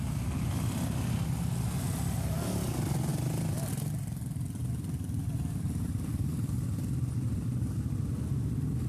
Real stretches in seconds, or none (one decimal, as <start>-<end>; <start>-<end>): 0.0-3.1; 6.5-8.9